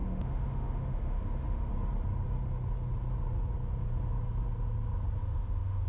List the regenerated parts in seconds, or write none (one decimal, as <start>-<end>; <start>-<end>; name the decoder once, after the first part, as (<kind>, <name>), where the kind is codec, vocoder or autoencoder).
0.0-1.7 (autoencoder, DAC-VAE); 5.2-5.9